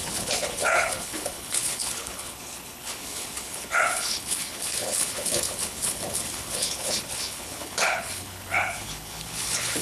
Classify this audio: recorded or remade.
remade